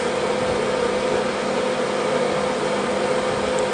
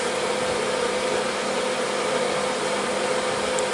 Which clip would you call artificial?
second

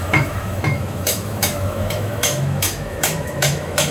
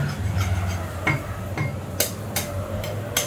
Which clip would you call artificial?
first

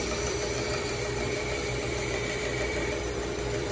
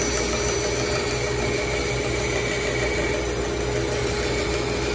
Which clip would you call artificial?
first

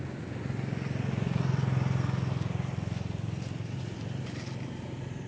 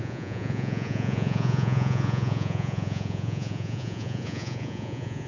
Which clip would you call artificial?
second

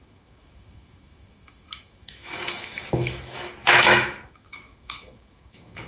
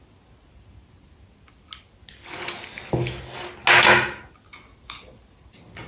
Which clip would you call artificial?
first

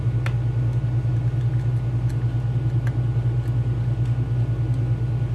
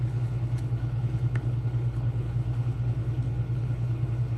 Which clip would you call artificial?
second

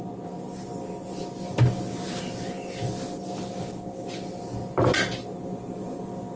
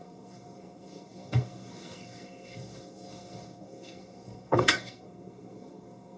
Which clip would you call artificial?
second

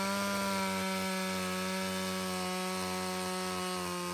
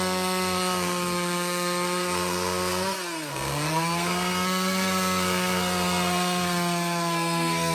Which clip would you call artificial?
second